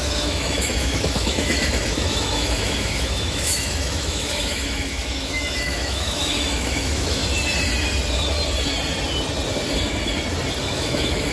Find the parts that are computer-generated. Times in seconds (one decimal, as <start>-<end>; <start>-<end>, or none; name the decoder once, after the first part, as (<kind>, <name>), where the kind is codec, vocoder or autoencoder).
0.0-7.2 (autoencoder, DAC-VAE); 10.6-11.3